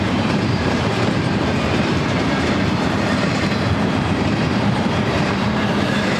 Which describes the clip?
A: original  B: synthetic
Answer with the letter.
B